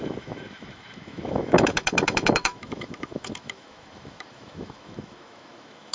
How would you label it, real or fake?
fake